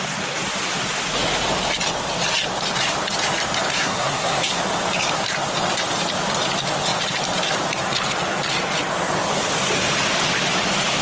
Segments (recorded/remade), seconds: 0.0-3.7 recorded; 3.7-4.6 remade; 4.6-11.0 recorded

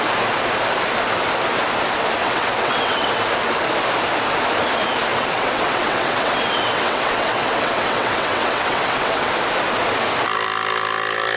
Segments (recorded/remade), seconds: 0.0-2.2 recorded; 2.2-3.1 remade; 3.1-5.1 recorded; 5.1-9.3 remade; 9.3-11.4 recorded

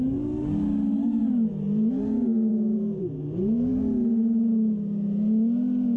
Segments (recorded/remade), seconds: 0.0-6.0 recorded

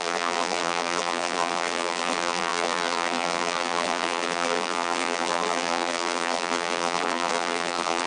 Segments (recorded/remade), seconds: 0.0-8.1 remade

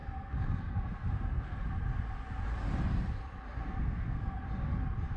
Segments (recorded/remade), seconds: 0.0-1.6 remade; 1.6-3.8 recorded; 3.8-4.4 remade; 4.4-5.2 recorded

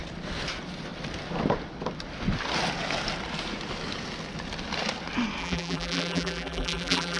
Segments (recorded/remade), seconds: 0.0-5.4 recorded; 5.4-7.2 remade

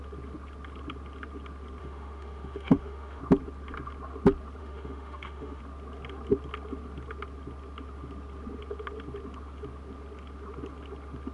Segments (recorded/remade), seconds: 0.0-1.8 recorded; 1.8-3.2 remade; 3.2-4.6 recorded; 4.6-5.6 remade; 5.6-11.3 recorded